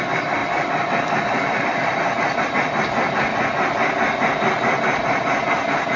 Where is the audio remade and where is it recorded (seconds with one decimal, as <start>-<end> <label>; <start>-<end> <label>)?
0.0-0.4 recorded; 0.4-2.4 remade; 2.4-6.0 recorded